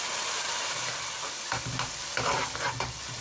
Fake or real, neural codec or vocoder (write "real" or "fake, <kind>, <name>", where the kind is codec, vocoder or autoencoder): real